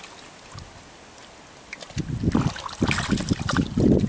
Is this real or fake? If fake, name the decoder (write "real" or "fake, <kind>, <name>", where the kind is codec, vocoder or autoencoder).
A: real